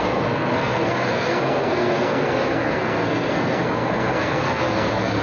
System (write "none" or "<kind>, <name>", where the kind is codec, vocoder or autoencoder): codec, SNAC